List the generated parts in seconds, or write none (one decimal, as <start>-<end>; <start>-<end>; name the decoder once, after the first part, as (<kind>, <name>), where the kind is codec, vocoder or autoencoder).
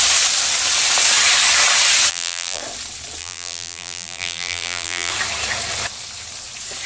2.1-2.6 (vocoder, BigVGAN v2); 3.2-5.1